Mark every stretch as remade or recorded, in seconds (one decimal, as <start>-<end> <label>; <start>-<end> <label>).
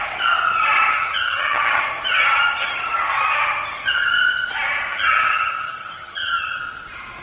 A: 0.0-0.9 recorded; 0.9-1.8 remade; 1.8-4.9 recorded; 4.9-6.6 remade; 6.6-7.2 recorded